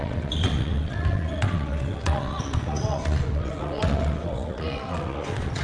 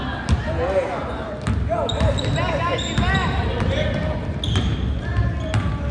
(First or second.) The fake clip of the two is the first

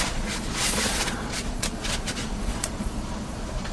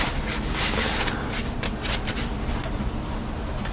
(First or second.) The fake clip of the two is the first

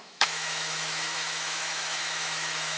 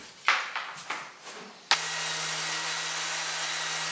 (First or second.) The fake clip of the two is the first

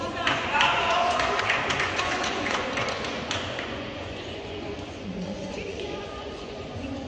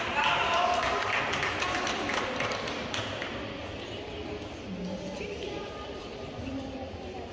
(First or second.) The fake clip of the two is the first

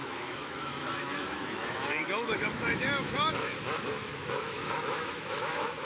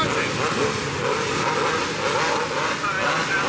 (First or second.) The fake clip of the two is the first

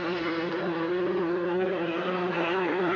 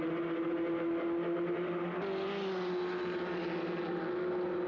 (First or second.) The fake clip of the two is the first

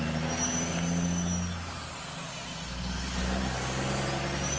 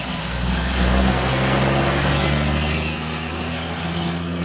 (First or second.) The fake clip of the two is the second